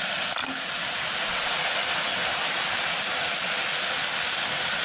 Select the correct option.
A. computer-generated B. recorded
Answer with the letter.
B